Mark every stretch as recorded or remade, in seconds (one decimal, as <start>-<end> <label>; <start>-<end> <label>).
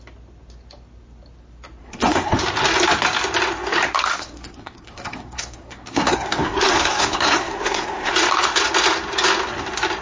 0.0-1.8 recorded; 1.8-2.4 remade; 2.4-4.1 recorded; 4.1-8.1 remade; 8.1-10.0 recorded